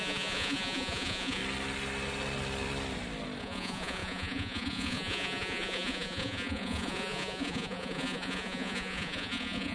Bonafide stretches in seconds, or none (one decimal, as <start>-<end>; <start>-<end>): 1.4-3.4